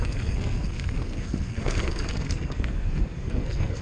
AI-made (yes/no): yes